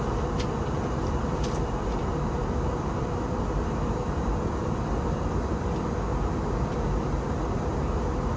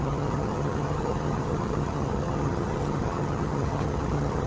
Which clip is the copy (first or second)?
second